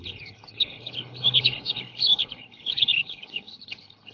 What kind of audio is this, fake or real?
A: fake